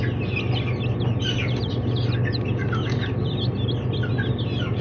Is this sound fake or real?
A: real